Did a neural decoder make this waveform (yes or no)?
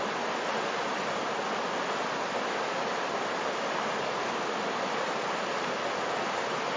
no